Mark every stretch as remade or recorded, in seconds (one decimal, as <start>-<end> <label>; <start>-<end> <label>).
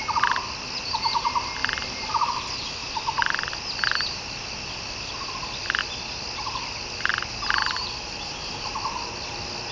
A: 0.0-9.7 recorded